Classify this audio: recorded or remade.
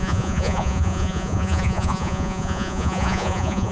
remade